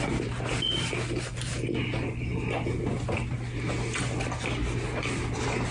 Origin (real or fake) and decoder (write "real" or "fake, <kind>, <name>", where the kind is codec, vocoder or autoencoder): real